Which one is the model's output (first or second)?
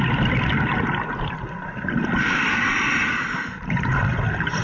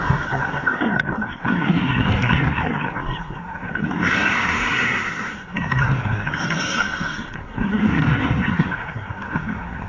second